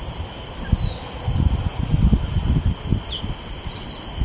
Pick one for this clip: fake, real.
real